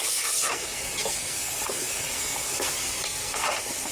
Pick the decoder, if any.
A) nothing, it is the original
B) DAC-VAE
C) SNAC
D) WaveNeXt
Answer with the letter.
C